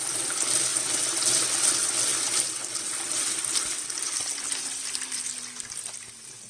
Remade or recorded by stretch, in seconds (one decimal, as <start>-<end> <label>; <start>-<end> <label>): 0.0-6.5 recorded